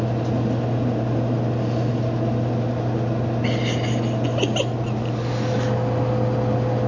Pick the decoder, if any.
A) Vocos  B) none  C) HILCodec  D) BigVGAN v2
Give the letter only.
B